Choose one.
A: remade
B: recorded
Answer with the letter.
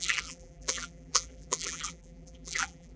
A